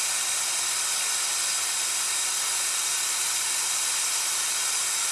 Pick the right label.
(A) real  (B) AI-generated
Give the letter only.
A